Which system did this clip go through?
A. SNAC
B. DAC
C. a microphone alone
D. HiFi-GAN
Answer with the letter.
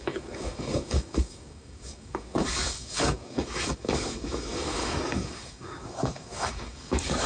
B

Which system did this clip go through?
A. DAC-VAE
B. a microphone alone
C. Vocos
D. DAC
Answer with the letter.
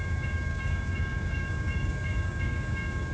D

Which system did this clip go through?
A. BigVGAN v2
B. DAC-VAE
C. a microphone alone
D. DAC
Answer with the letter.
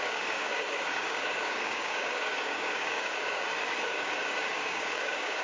D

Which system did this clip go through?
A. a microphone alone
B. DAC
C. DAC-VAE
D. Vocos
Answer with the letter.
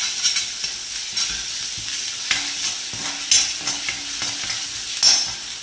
A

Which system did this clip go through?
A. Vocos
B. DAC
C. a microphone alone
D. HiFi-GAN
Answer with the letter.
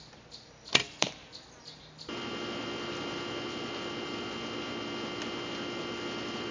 C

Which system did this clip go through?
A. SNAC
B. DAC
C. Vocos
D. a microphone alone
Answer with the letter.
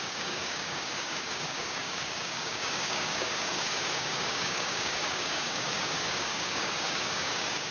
B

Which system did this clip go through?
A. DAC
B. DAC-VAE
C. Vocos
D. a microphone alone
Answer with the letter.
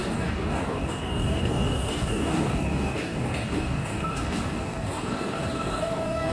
A